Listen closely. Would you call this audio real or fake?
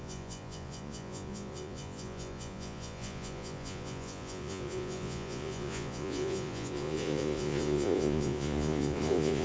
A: fake